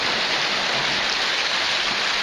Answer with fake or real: real